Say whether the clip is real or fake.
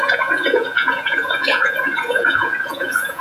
fake